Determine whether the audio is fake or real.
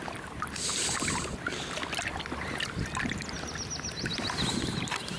real